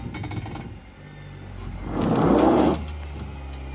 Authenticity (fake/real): real